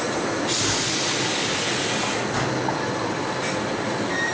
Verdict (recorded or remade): recorded